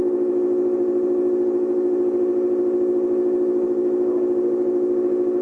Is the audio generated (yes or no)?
no